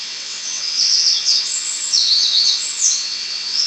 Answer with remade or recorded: remade